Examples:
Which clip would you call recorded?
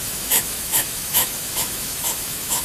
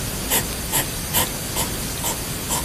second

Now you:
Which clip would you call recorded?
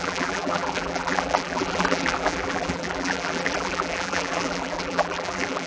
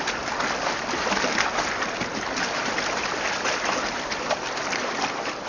second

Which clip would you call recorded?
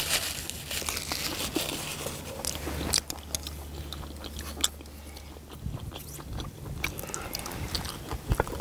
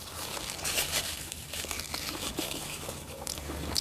first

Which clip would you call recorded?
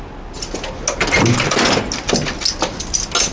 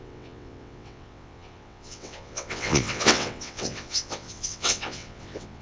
first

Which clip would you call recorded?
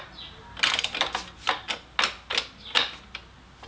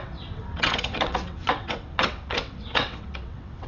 first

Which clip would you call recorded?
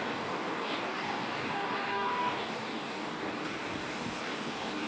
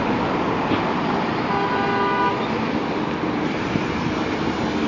second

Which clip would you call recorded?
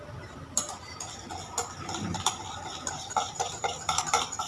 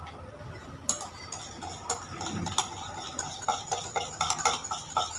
second